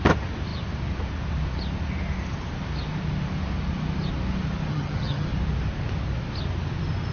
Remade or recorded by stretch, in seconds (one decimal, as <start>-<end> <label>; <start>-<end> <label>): 0.0-4.7 recorded; 4.7-5.3 remade; 5.3-7.1 recorded